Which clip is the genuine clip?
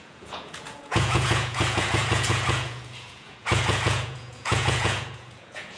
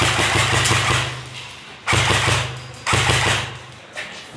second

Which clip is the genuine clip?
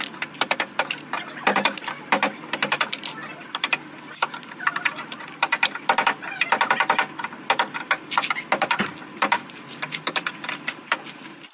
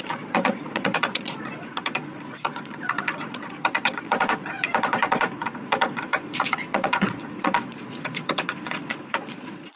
first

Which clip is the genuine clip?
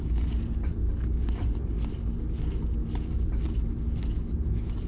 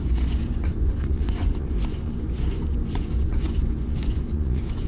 first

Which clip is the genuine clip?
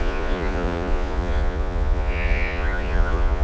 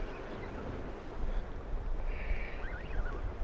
second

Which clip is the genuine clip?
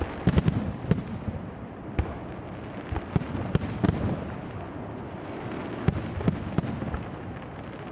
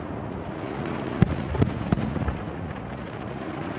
first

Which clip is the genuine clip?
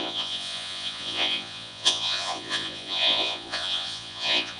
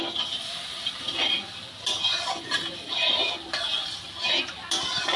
second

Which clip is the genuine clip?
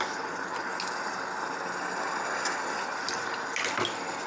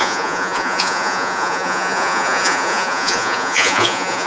first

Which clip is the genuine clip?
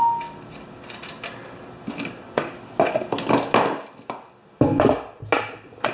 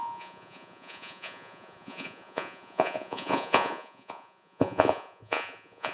first